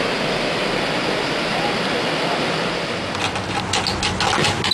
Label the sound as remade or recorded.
recorded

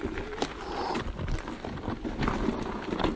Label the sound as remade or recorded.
recorded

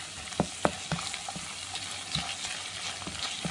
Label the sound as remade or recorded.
recorded